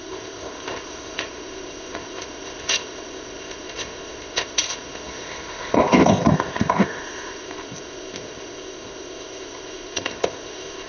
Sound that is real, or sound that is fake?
fake